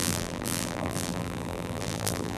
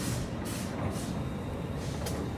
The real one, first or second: second